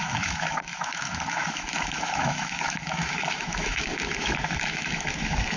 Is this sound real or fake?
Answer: fake